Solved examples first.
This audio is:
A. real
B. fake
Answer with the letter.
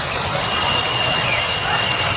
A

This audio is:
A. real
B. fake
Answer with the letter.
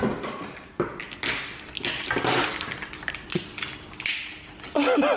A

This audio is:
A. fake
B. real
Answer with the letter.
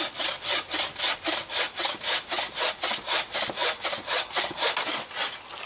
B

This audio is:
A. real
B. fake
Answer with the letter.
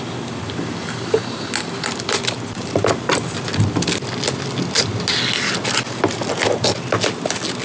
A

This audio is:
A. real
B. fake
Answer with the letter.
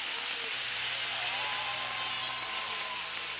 A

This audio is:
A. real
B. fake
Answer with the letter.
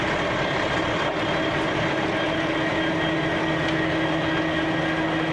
A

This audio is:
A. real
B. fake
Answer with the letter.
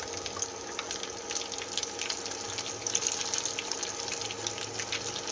A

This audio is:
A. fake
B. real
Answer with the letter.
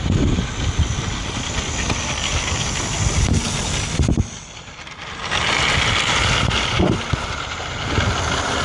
B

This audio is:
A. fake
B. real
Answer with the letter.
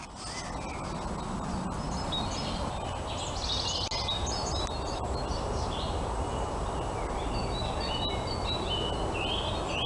B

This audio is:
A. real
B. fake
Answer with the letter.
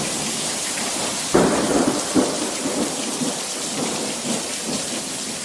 A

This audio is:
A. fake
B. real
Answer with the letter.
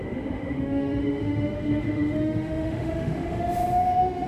A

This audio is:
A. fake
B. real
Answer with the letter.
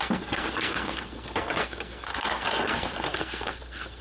A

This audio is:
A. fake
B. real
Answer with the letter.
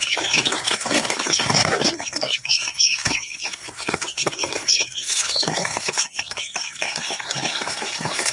A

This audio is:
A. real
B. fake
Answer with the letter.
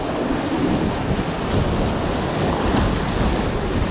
A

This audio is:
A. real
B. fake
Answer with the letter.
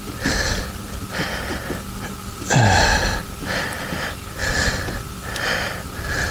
A